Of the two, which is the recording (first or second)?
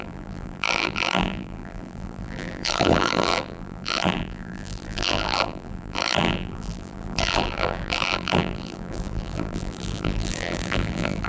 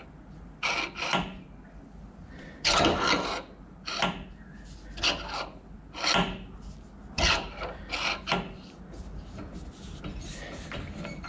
second